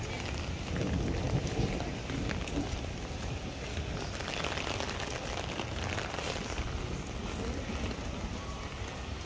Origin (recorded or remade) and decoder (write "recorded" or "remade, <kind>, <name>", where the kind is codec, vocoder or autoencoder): recorded